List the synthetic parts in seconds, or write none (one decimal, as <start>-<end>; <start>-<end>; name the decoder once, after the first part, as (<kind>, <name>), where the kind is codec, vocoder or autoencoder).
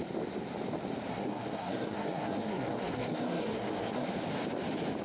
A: 1.1-4.1 (codec, SNAC)